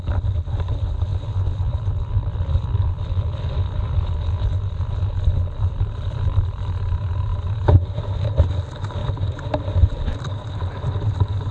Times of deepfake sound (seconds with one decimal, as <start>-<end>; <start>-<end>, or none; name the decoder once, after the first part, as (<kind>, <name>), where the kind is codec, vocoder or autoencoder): 1.1-3.4 (vocoder, BigVGAN v2)